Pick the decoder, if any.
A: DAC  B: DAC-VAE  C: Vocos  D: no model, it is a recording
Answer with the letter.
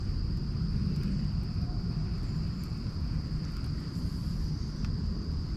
D